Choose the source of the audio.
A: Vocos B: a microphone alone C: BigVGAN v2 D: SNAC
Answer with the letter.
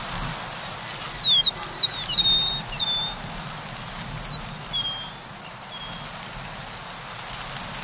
B